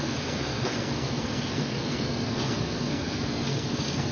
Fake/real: fake